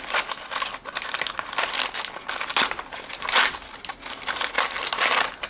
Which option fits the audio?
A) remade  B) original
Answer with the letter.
B